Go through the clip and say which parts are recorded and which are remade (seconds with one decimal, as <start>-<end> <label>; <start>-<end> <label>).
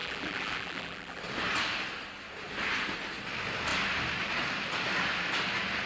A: 0.0-1.2 remade; 1.2-5.9 recorded